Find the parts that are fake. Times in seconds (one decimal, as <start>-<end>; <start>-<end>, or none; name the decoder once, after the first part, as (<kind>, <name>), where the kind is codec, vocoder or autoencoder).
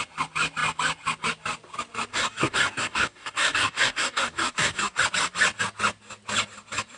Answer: 2.1-5.0 (codec, DAC)